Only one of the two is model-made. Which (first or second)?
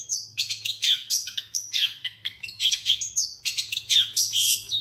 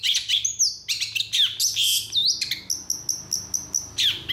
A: first